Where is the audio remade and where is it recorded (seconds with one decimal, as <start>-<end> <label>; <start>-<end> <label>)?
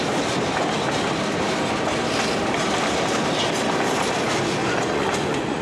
0.0-4.6 recorded; 4.6-5.6 remade